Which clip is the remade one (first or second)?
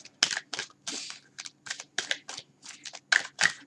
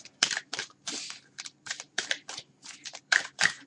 second